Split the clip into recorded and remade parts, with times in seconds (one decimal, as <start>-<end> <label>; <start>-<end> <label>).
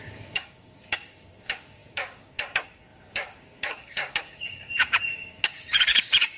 0.0-6.4 remade